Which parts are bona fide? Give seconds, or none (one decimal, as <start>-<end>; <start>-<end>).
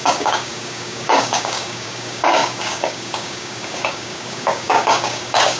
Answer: none